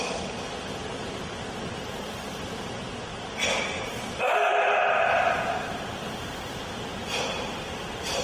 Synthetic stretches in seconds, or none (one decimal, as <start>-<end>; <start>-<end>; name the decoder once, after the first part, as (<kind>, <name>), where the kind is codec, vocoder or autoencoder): none